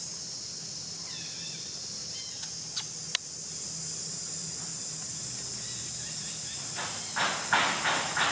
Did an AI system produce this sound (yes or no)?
no